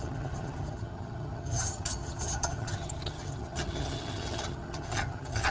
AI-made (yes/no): yes